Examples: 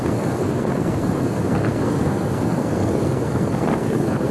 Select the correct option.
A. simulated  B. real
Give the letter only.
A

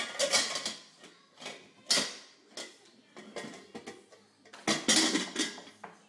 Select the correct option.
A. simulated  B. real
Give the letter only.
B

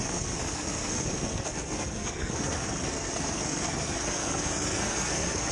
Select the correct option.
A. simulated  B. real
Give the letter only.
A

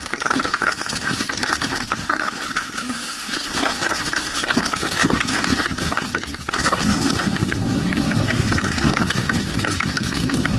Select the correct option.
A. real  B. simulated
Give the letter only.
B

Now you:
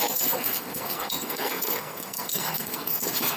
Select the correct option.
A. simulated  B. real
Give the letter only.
A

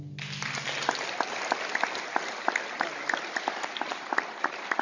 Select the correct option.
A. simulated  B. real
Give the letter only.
B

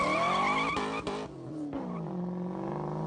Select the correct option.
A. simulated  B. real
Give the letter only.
B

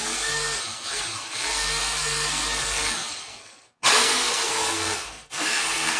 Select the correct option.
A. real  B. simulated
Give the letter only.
B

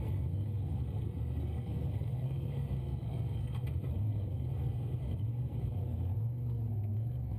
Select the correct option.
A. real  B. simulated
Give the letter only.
B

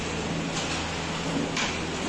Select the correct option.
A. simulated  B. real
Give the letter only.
B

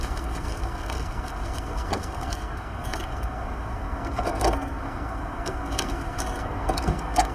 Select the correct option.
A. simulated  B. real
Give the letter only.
A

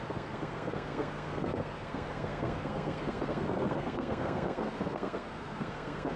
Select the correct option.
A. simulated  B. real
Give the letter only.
A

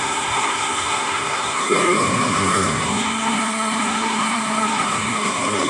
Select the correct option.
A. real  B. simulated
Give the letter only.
B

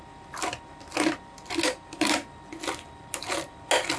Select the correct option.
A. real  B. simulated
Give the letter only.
A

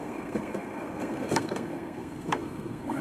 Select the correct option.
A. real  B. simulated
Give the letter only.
B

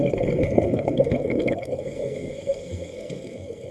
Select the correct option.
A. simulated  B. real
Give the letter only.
A